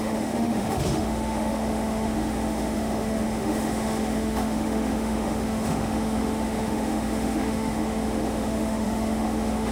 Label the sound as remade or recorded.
remade